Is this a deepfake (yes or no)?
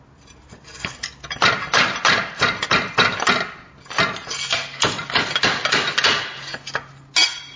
no